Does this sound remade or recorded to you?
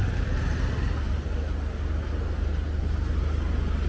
recorded